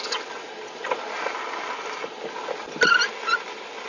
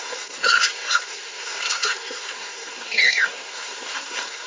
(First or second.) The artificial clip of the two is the second